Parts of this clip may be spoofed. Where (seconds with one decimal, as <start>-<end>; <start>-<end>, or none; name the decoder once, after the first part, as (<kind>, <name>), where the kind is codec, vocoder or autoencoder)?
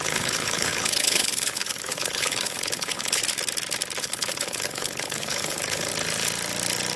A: 0.0-3.2 (codec, HILCodec); 4.0-5.9